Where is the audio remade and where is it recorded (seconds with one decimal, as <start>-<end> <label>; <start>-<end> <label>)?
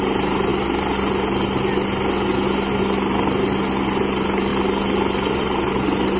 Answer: 0.0-6.2 recorded